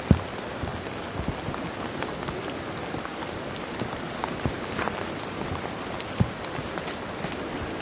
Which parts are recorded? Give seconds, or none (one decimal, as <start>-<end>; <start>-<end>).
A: 0.0-3.1; 6.2-7.8